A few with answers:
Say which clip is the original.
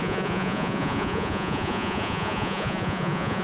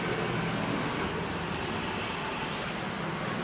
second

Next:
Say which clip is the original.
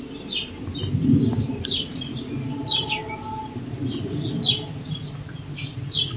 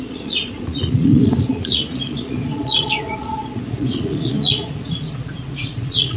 first